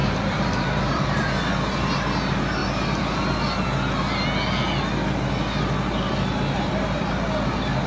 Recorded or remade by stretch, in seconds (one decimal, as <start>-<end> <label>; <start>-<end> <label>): 0.0-1.2 remade; 1.2-7.9 recorded